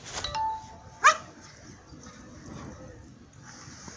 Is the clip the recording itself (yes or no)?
yes